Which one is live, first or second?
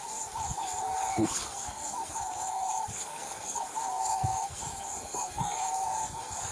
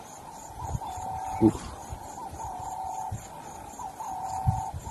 second